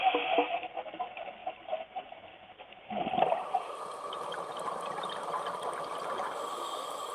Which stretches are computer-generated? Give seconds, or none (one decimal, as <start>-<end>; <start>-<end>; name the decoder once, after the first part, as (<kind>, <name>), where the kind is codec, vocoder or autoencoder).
none